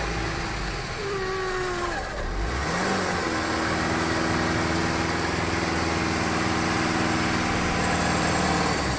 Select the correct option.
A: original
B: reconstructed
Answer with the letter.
A